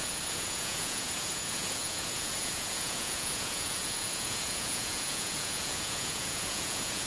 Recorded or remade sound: remade